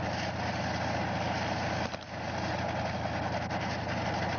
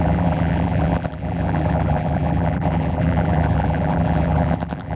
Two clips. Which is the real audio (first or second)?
first